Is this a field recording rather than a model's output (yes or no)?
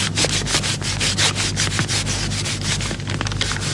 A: yes